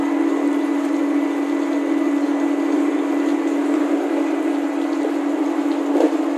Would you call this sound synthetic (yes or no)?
no